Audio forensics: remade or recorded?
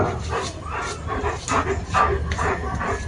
recorded